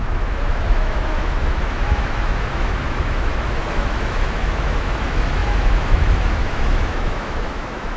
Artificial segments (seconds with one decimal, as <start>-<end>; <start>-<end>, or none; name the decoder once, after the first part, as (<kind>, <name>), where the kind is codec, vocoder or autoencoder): 0.0-8.0 (autoencoder, DAC-VAE)